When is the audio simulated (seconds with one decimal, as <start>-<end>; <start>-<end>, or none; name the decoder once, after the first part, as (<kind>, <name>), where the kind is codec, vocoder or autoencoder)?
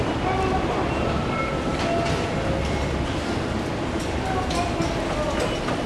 none